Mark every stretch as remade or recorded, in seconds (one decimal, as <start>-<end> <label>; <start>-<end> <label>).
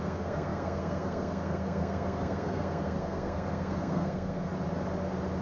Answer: 0.0-4.5 remade; 4.5-5.4 recorded